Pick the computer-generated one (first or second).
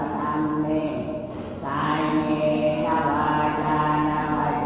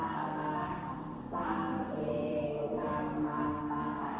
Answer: second